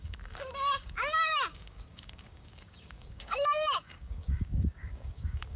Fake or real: fake